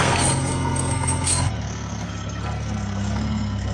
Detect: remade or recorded remade